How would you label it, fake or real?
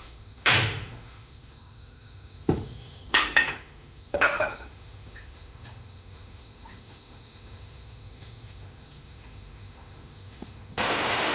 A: fake